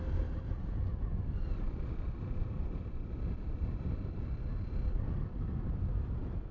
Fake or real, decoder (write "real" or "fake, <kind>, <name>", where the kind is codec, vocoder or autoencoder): real